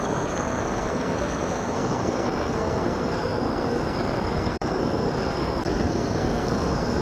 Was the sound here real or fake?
fake